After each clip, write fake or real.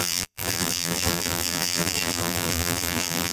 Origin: fake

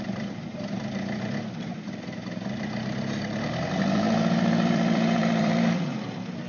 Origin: fake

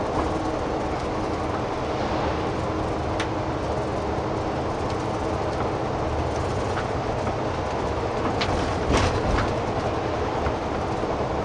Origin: real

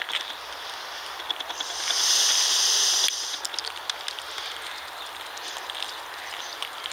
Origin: real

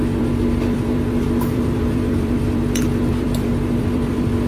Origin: fake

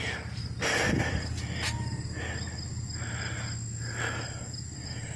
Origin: real